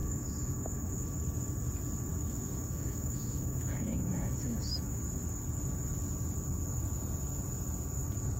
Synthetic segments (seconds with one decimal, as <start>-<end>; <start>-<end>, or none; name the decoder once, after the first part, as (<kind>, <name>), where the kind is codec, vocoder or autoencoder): 0.0-1.2 (autoencoder, DAC-VAE); 2.1-5.0